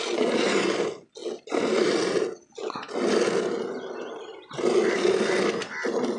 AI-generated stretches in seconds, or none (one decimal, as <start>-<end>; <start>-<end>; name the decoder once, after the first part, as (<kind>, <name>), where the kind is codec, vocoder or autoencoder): none